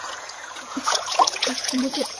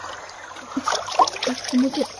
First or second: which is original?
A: second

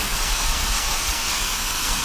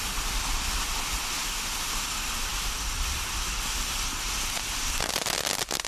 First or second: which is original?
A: second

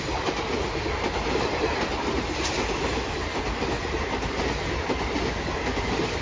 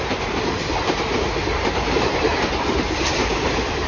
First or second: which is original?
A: first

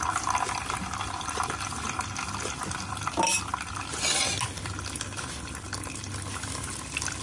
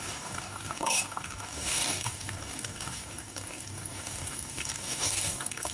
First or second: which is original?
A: first